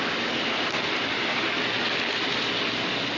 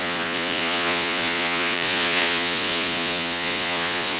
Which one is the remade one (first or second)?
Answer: second